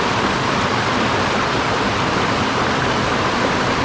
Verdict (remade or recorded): recorded